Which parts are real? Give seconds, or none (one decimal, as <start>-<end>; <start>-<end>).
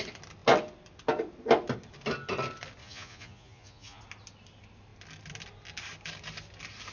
0.0-2.8; 4.0-6.9